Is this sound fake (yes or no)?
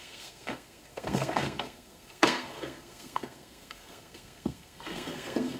yes